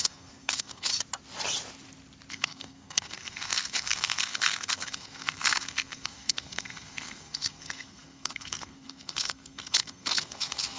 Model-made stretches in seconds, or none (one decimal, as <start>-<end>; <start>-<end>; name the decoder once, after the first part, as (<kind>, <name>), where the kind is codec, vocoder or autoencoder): 0.0-0.9 (codec, SNAC); 2.3-10.8

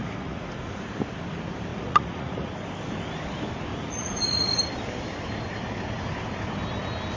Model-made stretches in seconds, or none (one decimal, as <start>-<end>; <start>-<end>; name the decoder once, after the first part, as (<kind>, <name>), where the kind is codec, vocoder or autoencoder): 0.0-0.8 (vocoder, Vocos); 1.7-2.5; 3.7-4.6

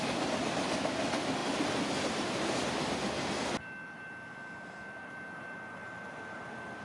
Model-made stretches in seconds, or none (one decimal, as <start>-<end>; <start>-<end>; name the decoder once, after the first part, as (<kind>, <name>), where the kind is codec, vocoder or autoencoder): none

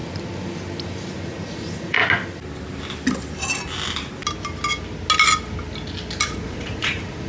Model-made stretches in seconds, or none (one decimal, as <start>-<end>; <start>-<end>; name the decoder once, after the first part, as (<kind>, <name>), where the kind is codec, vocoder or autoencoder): 1.1-2.0 (vocoder, Vocos); 6.3-7.3